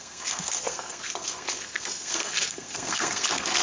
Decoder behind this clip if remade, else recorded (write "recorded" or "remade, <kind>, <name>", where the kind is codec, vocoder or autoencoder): remade, codec, SNAC